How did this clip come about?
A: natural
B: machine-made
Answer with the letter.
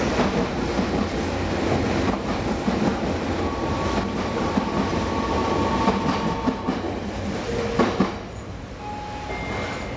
A